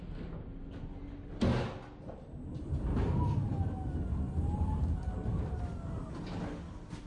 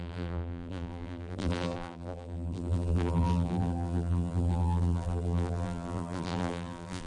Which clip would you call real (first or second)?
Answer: first